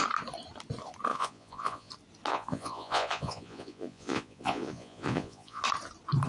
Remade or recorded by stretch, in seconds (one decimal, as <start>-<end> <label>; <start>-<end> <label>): 0.0-1.1 recorded; 1.1-1.9 remade; 1.9-2.3 recorded; 2.3-5.6 remade; 5.6-6.3 recorded